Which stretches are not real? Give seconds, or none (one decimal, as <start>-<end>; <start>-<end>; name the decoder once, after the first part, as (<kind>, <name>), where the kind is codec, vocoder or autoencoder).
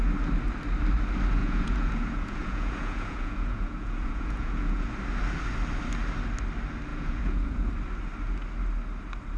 1.4-4.9 (vocoder, Vocos); 6.9-7.7